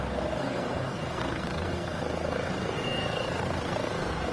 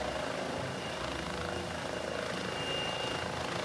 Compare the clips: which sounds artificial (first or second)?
first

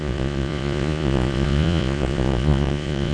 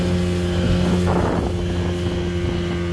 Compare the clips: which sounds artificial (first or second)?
first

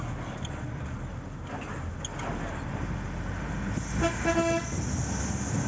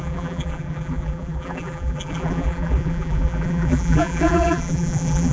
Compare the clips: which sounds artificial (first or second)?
second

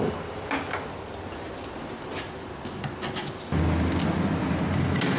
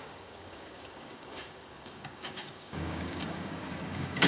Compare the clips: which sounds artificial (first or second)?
second